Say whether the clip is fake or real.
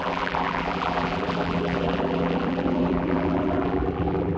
fake